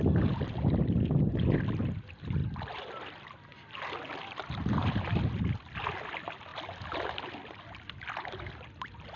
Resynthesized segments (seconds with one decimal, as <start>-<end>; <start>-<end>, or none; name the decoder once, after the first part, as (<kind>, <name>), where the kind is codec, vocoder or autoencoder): 2.4-3.9 (vocoder, BigVGAN v2)